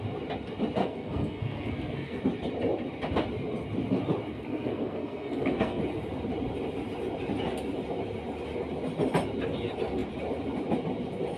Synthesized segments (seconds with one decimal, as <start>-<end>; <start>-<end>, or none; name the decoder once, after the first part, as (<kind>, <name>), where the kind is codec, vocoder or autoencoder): 0.8-2.2 (codec, SNAC); 4.3-5.8